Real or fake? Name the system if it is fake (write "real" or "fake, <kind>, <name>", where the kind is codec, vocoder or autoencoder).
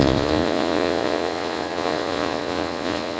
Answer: fake, vocoder, Vocos